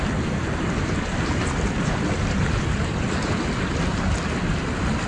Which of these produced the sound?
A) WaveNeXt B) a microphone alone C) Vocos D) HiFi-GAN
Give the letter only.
B